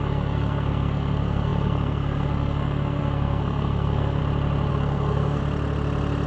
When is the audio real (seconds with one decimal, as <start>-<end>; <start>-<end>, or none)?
4.2-4.7; 5.4-6.3